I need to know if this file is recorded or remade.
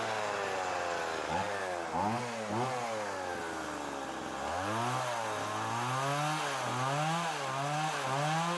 recorded